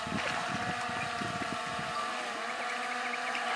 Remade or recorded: recorded